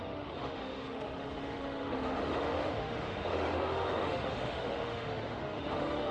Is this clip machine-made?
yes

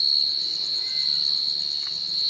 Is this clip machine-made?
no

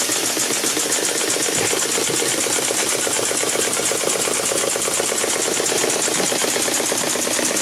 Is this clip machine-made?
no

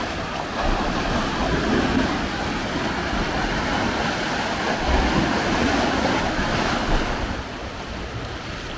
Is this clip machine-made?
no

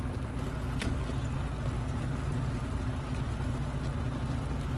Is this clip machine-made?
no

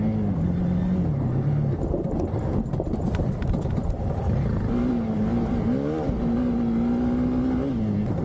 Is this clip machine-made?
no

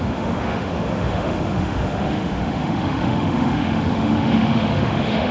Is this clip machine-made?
yes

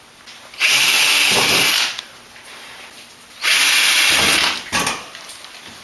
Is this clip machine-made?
no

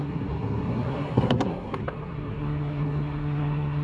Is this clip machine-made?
yes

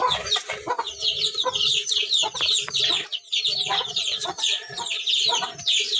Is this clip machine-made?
yes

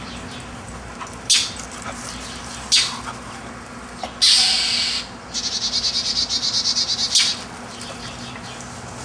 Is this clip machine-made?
no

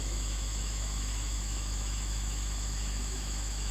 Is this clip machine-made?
yes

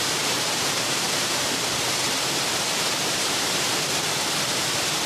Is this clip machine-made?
yes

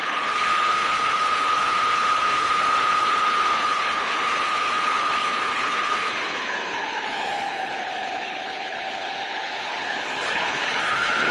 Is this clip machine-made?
yes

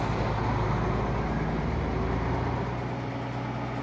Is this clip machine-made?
no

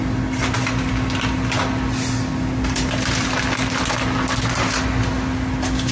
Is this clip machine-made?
no